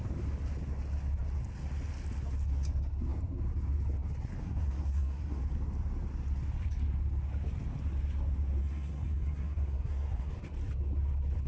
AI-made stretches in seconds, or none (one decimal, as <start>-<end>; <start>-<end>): 4.4-5.4; 8.6-10.3

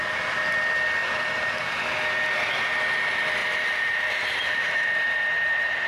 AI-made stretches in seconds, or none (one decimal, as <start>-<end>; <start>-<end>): 1.0-1.8; 3.4-5.9